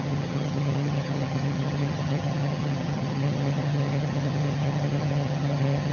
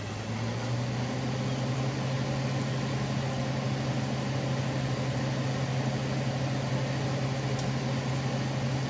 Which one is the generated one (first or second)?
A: first